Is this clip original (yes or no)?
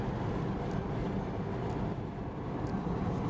yes